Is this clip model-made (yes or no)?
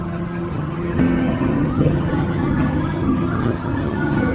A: yes